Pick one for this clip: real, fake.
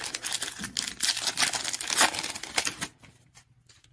real